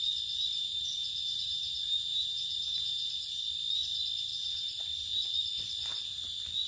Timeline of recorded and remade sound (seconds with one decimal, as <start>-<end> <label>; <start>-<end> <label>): 0.0-0.6 recorded; 0.6-3.4 remade; 3.4-4.3 recorded; 4.3-4.8 remade; 4.8-6.7 recorded